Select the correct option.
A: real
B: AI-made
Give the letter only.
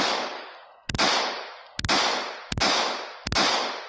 A